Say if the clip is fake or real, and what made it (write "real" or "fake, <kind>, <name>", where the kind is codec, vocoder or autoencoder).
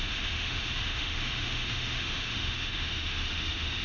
fake, autoencoder, DAC-VAE